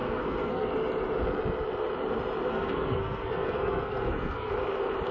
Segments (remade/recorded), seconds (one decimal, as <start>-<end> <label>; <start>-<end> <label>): 0.0-0.7 remade; 0.7-2.5 recorded; 2.5-4.5 remade; 4.5-5.1 recorded